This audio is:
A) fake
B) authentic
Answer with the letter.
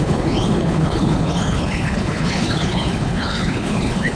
A